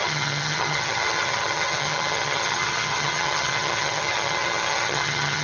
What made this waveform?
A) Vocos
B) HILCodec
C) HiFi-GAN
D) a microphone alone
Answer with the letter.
C